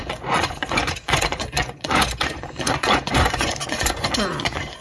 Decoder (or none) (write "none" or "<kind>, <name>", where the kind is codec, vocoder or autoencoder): vocoder, Vocos